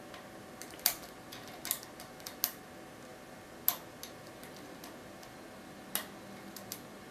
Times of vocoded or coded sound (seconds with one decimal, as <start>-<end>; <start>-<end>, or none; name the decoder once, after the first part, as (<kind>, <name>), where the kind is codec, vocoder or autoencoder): none